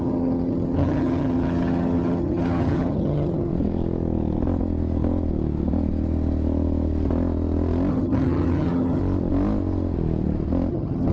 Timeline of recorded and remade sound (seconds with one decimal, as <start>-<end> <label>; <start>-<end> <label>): 0.0-3.5 remade; 3.5-7.9 recorded; 7.9-9.0 remade; 9.0-10.7 recorded; 10.7-11.1 remade